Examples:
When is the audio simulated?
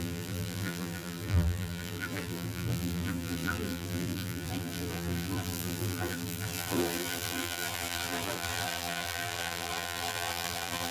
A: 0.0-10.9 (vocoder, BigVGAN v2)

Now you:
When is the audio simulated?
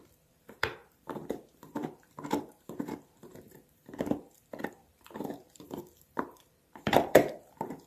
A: 0.0-7.9 (vocoder, BigVGAN v2)